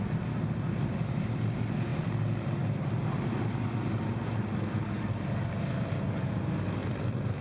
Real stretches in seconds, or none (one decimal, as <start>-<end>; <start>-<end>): 0.0-7.4